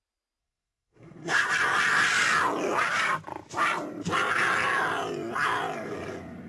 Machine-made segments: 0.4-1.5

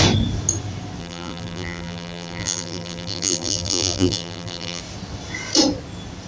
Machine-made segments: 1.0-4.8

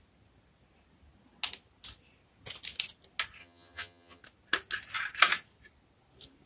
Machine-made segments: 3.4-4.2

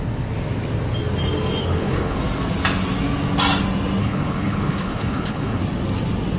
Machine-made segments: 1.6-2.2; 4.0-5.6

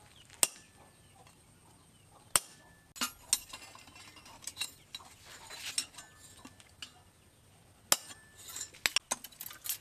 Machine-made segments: none

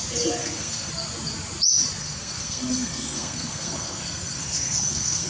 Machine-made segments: 0.4-0.9; 2.0-5.3

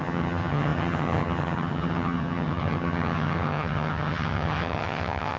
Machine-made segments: 0.0-5.4